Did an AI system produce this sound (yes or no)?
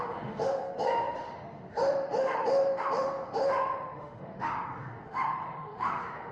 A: yes